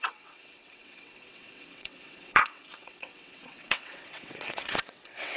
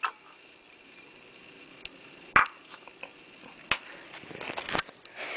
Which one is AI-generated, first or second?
first